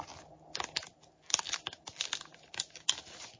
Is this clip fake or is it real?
real